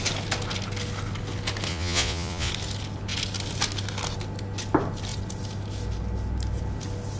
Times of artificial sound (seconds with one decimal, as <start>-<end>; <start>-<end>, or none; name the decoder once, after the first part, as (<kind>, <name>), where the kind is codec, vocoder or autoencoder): 1.7-2.5 (vocoder, Vocos)